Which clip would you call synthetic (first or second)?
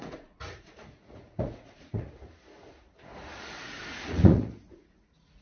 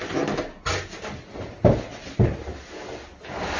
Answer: first